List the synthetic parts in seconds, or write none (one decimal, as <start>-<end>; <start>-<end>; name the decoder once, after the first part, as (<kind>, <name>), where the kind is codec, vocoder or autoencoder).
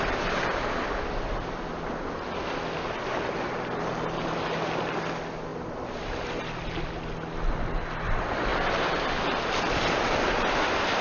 none